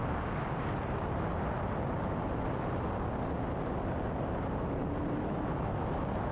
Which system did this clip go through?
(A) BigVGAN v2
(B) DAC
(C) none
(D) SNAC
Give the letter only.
C